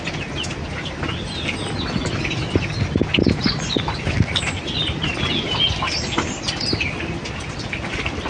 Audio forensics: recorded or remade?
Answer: recorded